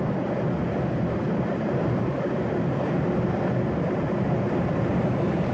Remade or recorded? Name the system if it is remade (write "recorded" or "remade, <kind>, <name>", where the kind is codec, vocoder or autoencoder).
recorded